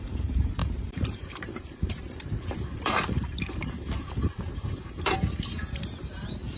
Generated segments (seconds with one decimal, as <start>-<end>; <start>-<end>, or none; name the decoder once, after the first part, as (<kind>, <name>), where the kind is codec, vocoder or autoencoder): 0.0-6.6 (vocoder, BigVGAN v2)